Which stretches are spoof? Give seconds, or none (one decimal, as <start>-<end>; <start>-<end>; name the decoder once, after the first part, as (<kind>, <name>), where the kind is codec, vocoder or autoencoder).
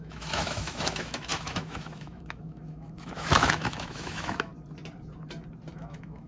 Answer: 0.0-4.5 (autoencoder, DAC-VAE); 5.7-6.3